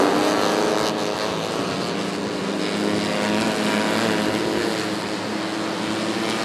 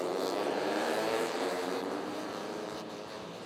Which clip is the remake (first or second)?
second